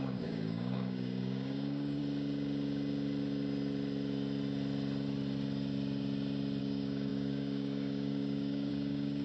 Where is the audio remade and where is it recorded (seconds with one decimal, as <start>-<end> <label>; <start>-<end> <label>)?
0.0-2.0 remade; 2.0-6.6 recorded; 6.6-9.2 remade